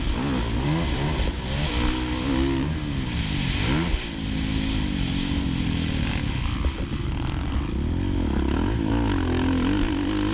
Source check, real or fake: real